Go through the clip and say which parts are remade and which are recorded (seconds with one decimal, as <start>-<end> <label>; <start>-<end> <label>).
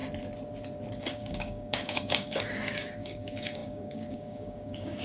0.0-1.0 recorded; 1.0-5.0 remade